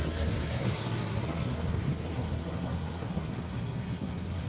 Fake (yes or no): yes